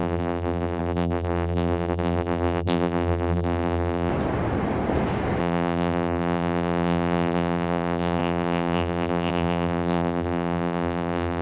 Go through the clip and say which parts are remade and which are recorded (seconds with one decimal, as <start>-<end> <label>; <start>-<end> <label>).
0.0-4.1 remade; 4.1-5.4 recorded; 5.4-11.4 remade